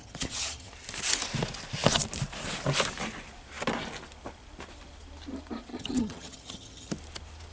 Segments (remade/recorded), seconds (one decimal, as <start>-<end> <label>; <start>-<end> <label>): 0.0-0.7 remade; 0.7-5.7 recorded; 5.7-6.9 remade; 6.9-7.5 recorded